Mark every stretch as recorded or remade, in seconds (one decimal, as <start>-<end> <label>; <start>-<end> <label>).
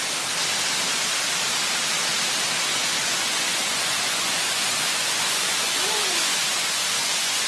0.0-2.7 recorded; 2.7-7.5 remade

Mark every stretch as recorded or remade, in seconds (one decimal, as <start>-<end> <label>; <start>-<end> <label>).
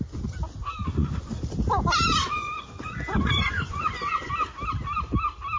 0.0-0.8 recorded; 0.8-1.3 remade; 1.3-2.2 recorded; 2.2-4.3 remade; 4.3-5.6 recorded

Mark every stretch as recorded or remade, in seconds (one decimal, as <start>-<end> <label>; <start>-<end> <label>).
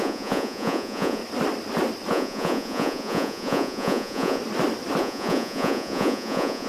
0.0-1.2 remade; 1.2-2.1 recorded; 2.1-4.4 remade; 4.4-5.0 recorded; 5.0-6.7 remade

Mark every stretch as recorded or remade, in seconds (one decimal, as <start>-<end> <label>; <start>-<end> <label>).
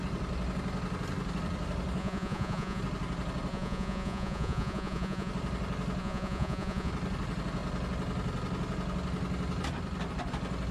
0.0-2.0 recorded; 2.0-2.8 remade; 2.8-3.5 recorded; 3.5-5.3 remade; 5.3-6.0 recorded; 6.0-6.9 remade; 6.9-10.7 recorded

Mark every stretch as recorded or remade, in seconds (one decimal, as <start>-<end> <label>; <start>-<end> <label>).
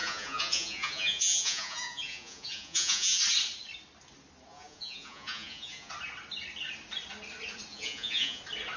0.0-3.2 remade; 3.2-4.5 recorded; 4.5-5.9 remade; 5.9-7.7 recorded; 7.7-8.4 remade; 8.4-8.8 recorded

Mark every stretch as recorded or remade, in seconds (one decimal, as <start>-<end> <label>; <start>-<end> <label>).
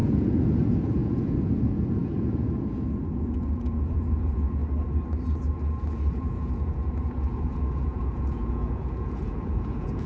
0.0-4.6 remade; 4.6-6.1 recorded; 6.1-10.1 remade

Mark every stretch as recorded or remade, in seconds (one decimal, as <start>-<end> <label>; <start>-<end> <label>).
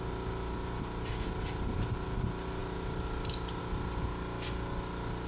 0.0-5.3 recorded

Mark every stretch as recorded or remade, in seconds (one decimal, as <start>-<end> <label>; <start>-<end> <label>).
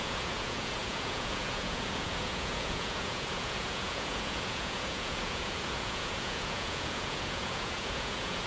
0.0-8.5 remade